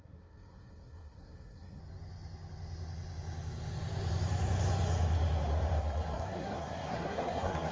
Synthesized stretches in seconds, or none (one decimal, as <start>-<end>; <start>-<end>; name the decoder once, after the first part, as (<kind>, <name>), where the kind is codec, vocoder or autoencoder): 0.0-1.8 (codec, SNAC); 5.8-7.7